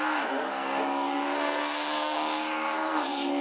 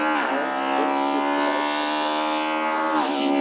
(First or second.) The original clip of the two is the second